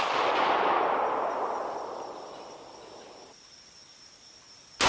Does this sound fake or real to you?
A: real